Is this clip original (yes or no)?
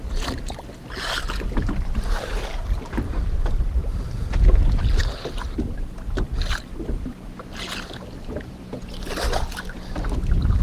yes